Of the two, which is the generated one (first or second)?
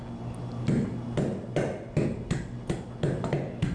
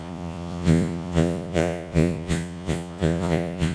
second